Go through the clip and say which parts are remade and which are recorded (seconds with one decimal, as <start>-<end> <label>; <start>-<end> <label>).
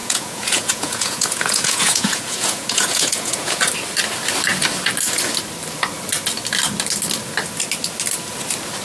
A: 0.0-3.6 remade; 3.6-8.8 recorded